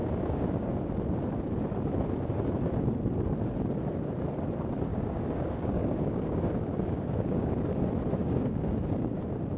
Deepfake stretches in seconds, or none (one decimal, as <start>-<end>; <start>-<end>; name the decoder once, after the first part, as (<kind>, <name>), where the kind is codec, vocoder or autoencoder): 0.0-0.9 (codec, DAC); 4.9-7.8; 8.2-9.2